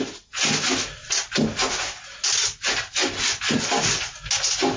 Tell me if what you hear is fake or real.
real